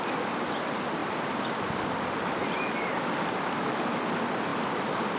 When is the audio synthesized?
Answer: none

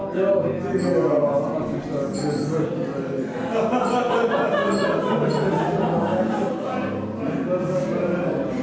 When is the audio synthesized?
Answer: none

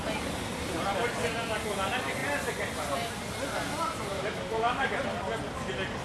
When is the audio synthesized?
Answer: 4.1-4.9